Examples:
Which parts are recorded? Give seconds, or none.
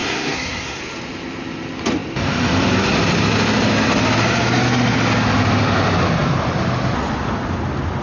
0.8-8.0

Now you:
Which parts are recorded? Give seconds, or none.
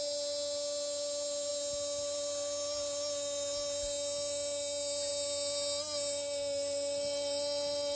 0.0-8.0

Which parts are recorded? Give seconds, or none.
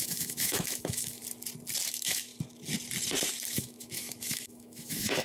1.2-1.9; 2.3-3.5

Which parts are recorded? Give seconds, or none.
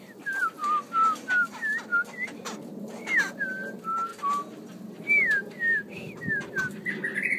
0.0-7.4